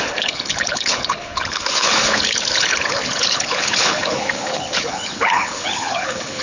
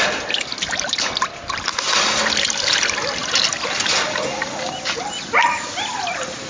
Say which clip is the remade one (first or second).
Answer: first